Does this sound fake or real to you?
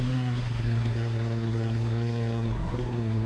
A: fake